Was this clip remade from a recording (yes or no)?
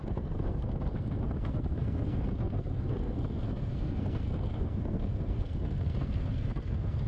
yes